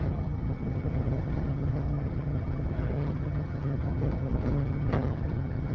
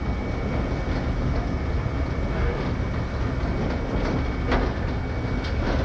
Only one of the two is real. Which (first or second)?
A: second